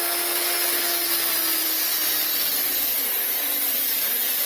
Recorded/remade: recorded